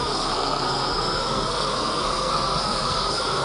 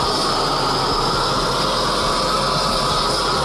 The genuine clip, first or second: second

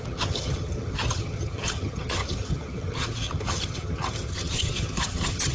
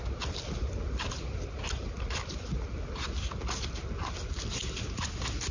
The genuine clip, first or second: second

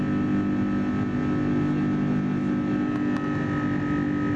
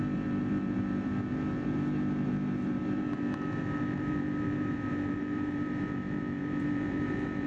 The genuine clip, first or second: first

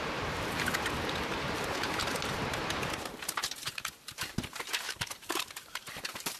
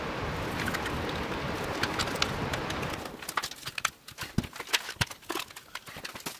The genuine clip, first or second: second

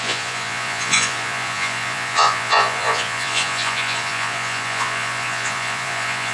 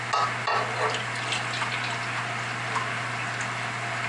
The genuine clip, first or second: second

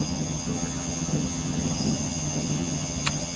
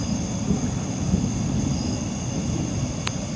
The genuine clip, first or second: second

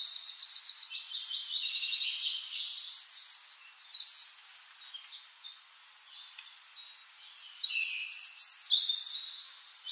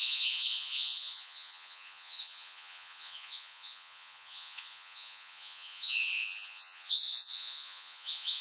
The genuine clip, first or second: first